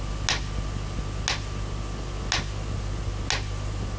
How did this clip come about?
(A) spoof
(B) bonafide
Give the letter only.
B